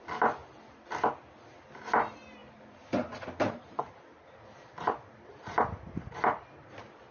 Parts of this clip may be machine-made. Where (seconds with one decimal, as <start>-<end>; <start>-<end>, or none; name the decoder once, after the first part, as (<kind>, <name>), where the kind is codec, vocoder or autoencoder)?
2.4-7.1 (vocoder, BigVGAN v2)